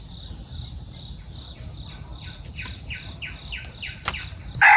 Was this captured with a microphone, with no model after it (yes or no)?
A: yes